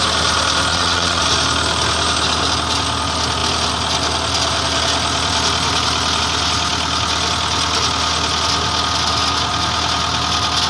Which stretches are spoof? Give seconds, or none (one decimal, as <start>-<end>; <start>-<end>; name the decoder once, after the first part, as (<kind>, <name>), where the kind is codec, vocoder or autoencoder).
0.7-1.2 (vocoder, Vocos)